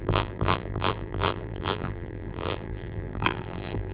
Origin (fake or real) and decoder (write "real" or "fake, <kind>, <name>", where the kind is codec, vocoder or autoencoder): fake, vocoder, BigVGAN v2